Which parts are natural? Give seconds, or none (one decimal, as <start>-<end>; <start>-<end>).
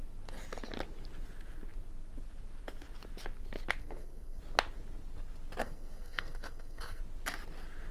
0.0-3.8; 4.4-5.6; 7.0-7.9